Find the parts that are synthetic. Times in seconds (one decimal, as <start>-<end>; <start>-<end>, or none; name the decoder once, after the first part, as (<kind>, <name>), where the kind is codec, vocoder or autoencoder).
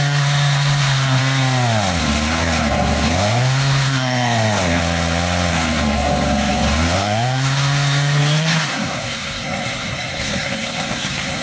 0.0-1.2 (codec, SNAC); 2.0-4.8; 5.5-11.4